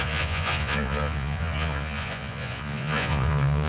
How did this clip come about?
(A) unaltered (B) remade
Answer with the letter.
B